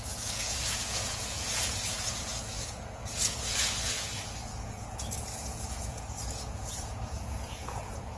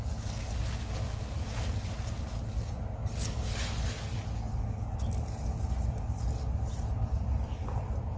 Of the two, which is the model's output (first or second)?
first